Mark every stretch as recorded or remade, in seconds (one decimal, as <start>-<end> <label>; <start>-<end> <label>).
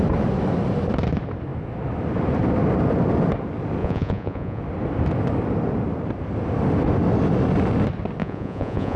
0.0-3.8 recorded; 3.8-4.6 remade; 4.6-8.2 recorded; 8.2-9.0 remade